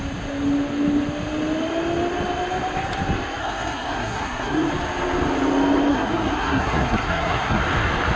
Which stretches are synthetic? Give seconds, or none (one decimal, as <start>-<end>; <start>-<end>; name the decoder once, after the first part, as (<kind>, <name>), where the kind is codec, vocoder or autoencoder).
3.4-4.7 (codec, SNAC); 5.9-7.6